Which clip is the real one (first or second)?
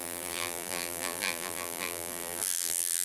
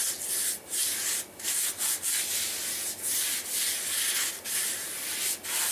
second